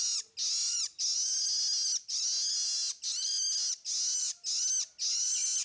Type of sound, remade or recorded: recorded